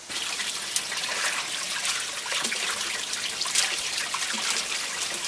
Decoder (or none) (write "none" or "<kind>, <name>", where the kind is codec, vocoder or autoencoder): none